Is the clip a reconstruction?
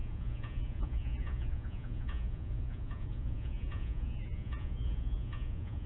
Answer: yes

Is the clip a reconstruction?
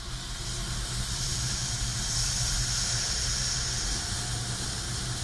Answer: no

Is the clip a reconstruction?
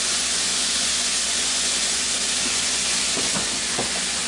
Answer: yes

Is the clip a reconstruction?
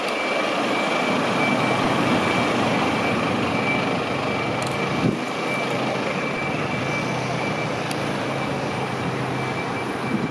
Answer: no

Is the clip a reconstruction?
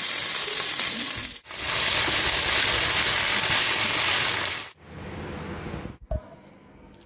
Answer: no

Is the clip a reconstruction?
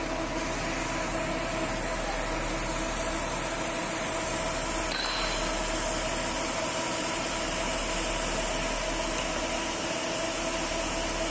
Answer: no